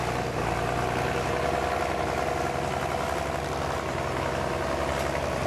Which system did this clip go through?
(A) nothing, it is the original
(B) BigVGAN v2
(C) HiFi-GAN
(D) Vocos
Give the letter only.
A